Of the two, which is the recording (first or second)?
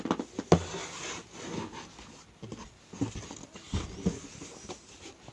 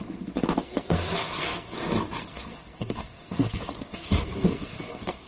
first